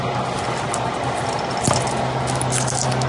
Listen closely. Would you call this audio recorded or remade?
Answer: recorded